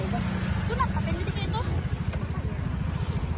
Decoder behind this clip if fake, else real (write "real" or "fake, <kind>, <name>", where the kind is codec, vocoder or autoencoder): real